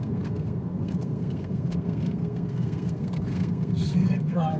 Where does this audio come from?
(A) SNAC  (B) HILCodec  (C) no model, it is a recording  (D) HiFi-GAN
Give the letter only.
A